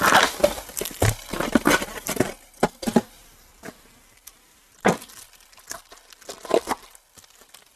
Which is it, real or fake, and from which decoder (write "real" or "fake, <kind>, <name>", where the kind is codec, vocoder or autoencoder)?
real